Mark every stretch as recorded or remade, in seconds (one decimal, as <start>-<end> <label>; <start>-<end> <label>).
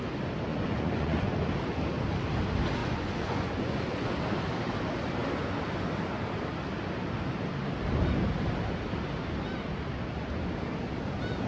0.0-0.5 recorded; 0.5-1.3 remade; 1.3-2.8 recorded; 2.8-4.1 remade; 4.1-11.5 recorded